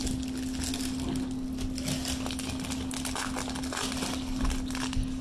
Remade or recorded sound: recorded